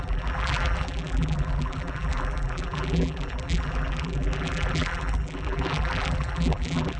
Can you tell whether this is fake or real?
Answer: fake